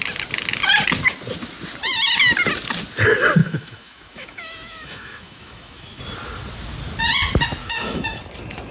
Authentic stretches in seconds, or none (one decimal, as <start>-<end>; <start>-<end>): 0.0-3.4; 6.0-7.6; 8.2-8.7